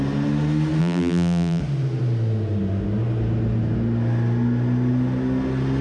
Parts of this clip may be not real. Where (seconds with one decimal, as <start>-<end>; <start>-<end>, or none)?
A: 0.8-1.6